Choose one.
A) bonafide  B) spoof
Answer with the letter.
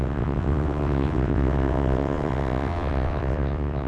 B